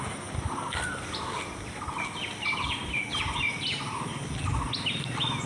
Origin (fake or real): real